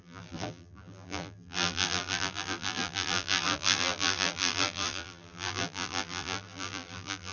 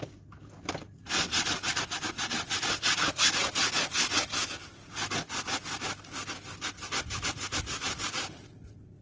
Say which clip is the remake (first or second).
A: first